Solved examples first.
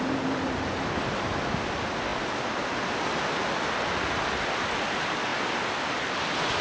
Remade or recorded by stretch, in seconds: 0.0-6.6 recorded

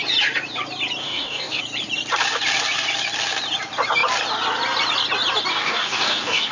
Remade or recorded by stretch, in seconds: 0.0-1.0 recorded; 1.0-1.6 remade; 1.6-5.5 recorded; 5.5-6.5 remade

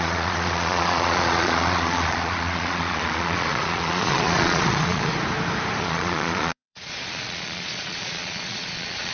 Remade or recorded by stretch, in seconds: 0.0-5.1 remade; 5.1-5.8 recorded; 5.8-9.1 remade

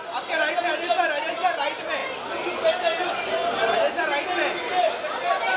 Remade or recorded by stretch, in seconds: 0.0-5.6 recorded

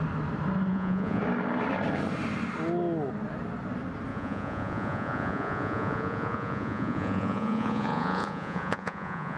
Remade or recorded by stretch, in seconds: 0.0-0.7 recorded; 0.7-1.2 remade; 1.2-4.1 recorded; 4.1-9.4 remade